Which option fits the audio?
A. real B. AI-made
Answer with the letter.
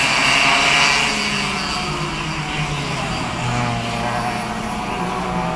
A